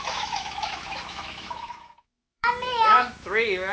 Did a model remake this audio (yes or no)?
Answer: yes